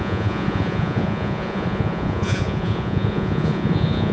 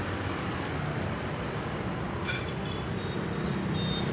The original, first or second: second